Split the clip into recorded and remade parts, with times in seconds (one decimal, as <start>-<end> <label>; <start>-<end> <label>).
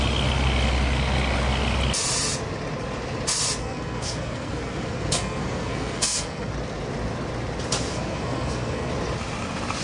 0.0-3.6 recorded; 3.6-6.5 remade; 6.5-7.9 recorded; 7.9-8.9 remade; 8.9-9.8 recorded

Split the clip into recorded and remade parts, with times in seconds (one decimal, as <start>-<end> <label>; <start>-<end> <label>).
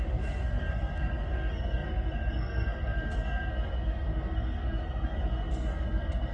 0.0-6.3 remade